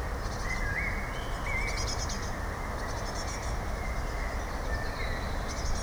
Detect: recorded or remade recorded